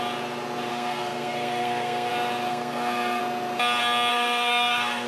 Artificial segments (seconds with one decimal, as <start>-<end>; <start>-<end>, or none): 0.7-2.1; 2.5-3.2; 4.1-5.1